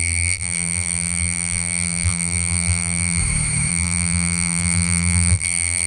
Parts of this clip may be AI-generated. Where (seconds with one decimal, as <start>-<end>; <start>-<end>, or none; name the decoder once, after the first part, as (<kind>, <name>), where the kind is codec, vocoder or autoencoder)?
0.0-3.2 (vocoder, BigVGAN v2); 3.7-5.9